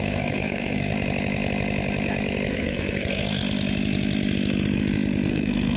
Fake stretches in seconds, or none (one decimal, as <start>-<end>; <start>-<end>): 0.0-0.9; 2.5-3.4; 5.3-5.8